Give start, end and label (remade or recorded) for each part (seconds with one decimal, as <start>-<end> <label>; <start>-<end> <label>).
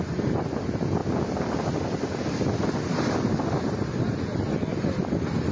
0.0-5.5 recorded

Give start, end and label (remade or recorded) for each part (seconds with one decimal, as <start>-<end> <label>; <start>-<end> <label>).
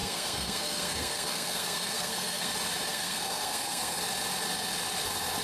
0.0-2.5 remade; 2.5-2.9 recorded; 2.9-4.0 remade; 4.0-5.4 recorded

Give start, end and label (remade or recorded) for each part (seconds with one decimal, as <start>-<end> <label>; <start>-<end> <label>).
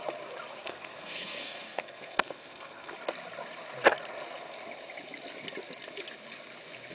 0.0-0.6 recorded; 0.6-2.9 remade; 2.9-6.9 recorded